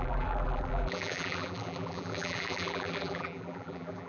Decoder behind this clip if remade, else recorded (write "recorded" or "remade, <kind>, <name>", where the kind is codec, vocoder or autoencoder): remade, vocoder, BigVGAN v2